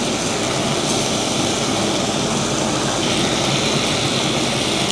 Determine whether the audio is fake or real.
real